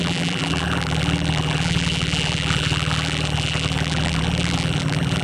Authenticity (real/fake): fake